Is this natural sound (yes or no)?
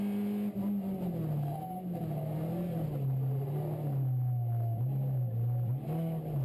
yes